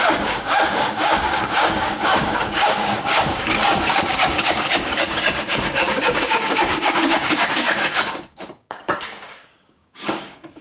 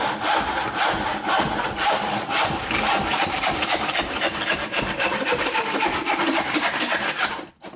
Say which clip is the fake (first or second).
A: first